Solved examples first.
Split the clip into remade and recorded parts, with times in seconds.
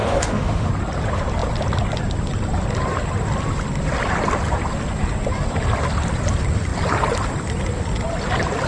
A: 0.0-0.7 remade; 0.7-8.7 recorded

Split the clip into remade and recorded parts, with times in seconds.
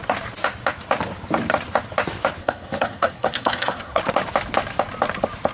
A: 0.0-2.4 recorded; 2.4-4.0 remade; 4.0-5.5 recorded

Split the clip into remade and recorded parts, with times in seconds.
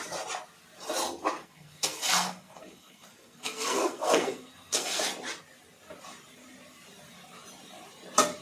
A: 0.0-1.3 recorded; 1.3-5.0 remade; 5.0-8.4 recorded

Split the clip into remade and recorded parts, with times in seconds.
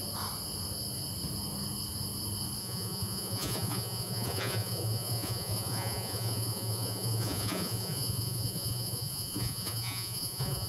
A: 0.0-2.6 recorded; 2.6-10.7 remade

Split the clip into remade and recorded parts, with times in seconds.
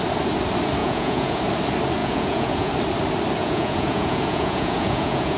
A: 0.0-0.8 recorded; 0.8-1.4 remade; 1.4-2.0 recorded; 2.0-2.7 remade; 2.7-3.4 recorded; 3.4-5.4 remade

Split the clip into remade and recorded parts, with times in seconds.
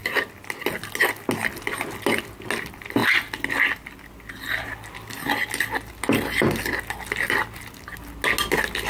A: 0.0-8.9 recorded